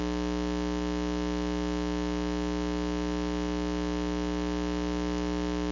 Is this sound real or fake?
real